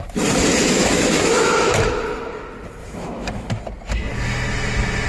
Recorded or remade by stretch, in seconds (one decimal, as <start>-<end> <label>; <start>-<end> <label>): 0.0-0.6 recorded; 0.6-1.9 remade; 1.9-2.8 recorded; 2.8-3.5 remade; 3.5-5.1 recorded